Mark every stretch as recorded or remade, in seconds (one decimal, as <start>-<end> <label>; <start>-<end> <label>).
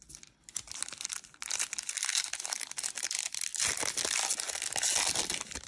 0.0-5.7 recorded